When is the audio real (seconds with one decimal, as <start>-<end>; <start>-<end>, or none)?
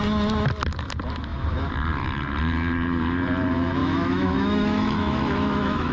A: 0.0-3.8